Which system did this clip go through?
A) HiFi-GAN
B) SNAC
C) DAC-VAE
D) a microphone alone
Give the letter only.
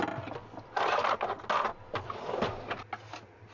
D